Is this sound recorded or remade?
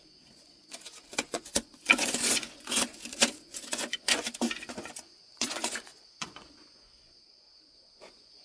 remade